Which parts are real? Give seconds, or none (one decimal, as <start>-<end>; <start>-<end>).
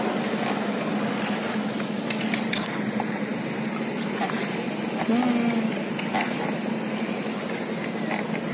0.0-8.5